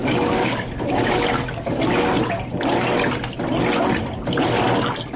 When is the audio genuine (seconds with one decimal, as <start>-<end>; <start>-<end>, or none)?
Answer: 2.0-5.2